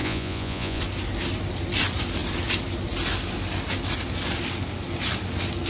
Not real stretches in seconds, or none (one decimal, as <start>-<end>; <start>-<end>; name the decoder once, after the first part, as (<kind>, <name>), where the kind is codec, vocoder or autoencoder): 0.0-0.8 (vocoder, Vocos)